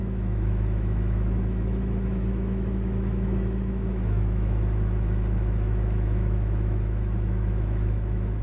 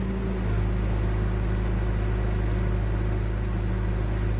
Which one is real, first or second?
second